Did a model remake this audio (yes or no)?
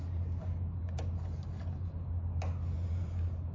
no